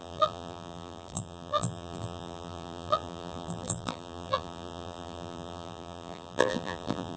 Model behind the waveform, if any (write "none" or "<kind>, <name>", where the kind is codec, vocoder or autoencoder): vocoder, BigVGAN v2